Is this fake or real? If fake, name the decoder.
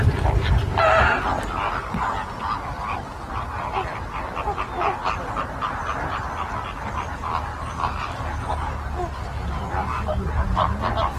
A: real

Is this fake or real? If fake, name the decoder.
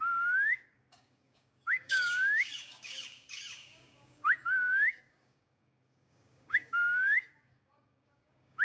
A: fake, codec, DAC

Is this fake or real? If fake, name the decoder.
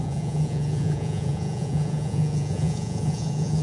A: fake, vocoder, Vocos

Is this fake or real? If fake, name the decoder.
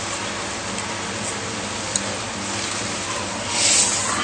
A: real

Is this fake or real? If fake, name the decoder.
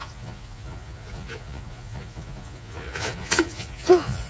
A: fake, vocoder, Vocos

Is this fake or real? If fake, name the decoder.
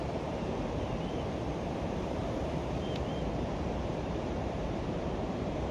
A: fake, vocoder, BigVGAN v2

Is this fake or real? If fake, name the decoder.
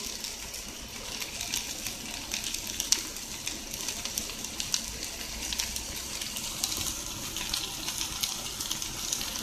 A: real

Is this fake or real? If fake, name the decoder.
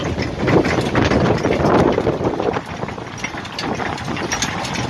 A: real